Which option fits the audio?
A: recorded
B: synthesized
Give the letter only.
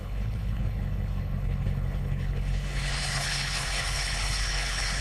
B